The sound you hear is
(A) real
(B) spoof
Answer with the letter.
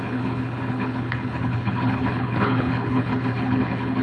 B